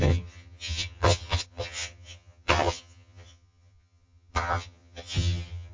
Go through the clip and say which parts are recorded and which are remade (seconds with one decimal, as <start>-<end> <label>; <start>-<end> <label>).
0.0-5.7 remade